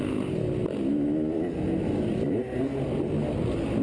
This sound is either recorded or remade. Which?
recorded